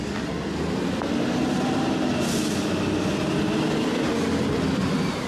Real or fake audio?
real